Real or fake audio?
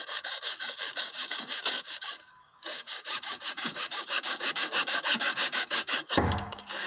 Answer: fake